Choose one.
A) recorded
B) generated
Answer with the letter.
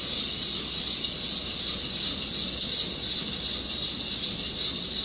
A